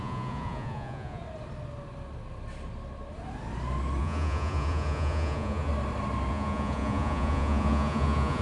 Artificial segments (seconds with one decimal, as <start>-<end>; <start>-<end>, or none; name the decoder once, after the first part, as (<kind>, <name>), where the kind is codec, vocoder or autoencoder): 0.0-1.2 (vocoder, Vocos); 4.0-5.7; 6.3-8.4